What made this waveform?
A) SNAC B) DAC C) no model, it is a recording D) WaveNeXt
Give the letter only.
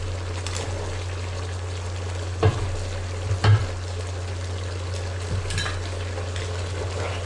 C